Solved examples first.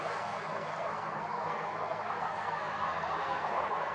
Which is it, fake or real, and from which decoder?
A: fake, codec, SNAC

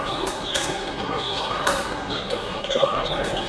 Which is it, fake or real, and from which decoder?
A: fake, codec, SNAC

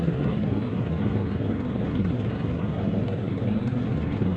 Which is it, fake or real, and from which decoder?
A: fake, codec, SNAC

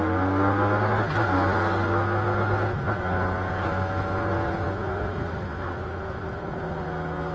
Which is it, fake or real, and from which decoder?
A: real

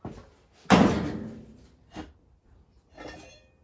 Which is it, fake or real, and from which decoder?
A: real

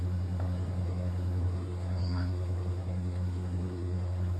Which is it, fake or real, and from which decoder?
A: fake, codec, SNAC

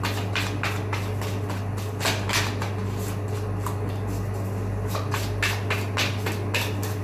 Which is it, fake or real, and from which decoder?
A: real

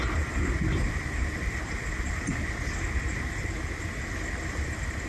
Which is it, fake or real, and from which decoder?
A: real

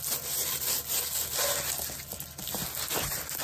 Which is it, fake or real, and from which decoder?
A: real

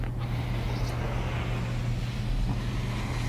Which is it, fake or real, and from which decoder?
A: real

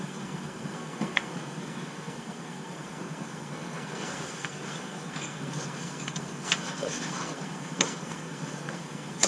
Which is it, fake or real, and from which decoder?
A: fake, codec, SNAC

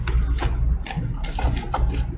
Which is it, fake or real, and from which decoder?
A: real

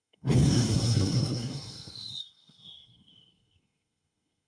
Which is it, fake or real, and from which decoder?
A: fake, codec, SNAC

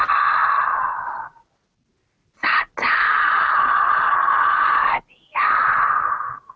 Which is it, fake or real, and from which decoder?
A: real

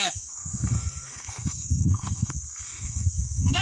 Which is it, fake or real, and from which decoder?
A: fake, codec, SNAC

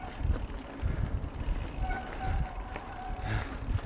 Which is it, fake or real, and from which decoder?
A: real